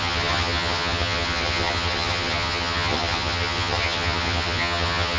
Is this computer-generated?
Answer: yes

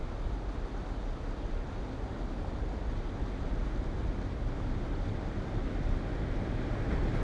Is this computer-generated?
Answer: no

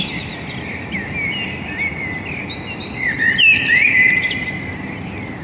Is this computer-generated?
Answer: no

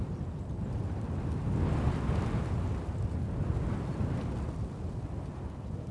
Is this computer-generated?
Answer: no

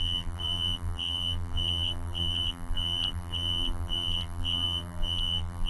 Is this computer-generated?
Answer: yes